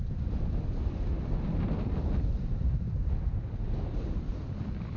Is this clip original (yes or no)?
yes